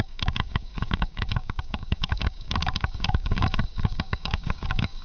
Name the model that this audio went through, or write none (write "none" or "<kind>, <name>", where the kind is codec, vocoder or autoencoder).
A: codec, DAC